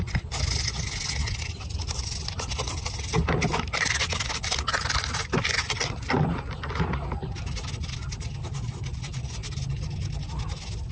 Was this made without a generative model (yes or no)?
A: yes